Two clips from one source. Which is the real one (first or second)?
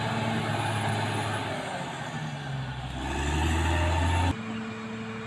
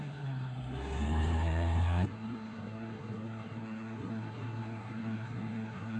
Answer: first